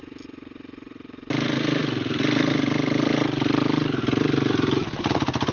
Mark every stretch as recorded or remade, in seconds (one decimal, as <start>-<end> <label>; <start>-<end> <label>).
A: 0.0-5.5 recorded

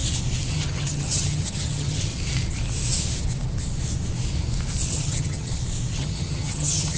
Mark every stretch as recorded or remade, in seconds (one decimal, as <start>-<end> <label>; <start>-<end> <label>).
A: 0.0-0.5 recorded; 0.5-2.1 remade; 2.1-4.9 recorded; 4.9-5.5 remade; 5.5-6.0 recorded; 6.0-7.0 remade

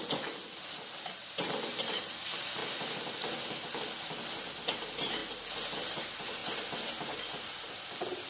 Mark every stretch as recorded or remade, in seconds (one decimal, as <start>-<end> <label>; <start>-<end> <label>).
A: 0.0-2.6 remade; 2.6-4.7 recorded; 4.7-5.2 remade; 5.2-5.9 recorded; 5.9-6.4 remade; 6.4-7.7 recorded; 7.7-8.3 remade

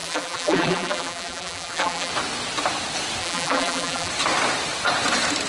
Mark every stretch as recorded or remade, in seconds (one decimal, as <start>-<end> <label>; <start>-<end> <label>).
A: 0.0-2.1 remade; 2.1-3.2 recorded; 3.2-4.1 remade; 4.1-5.5 recorded

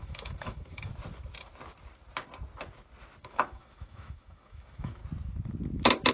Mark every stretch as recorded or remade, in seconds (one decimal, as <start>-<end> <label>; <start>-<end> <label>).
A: 0.0-0.9 remade; 0.9-3.2 recorded; 3.2-5.0 remade; 5.0-6.1 recorded

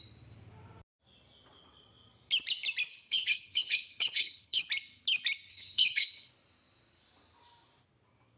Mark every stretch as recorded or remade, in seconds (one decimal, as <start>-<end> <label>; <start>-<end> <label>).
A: 0.0-2.9 recorded; 2.9-4.6 remade; 4.6-5.5 recorded; 5.5-6.3 remade; 6.3-8.4 recorded

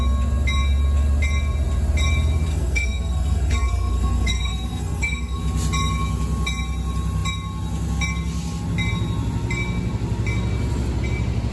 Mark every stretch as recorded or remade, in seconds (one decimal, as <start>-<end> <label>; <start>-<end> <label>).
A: 0.0-2.5 recorded; 2.5-5.4 remade; 5.4-11.5 recorded